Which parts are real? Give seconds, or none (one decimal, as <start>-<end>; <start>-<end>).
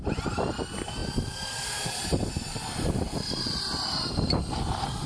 0.0-5.1